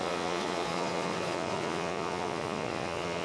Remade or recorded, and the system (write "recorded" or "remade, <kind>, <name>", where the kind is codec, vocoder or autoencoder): remade, vocoder, Vocos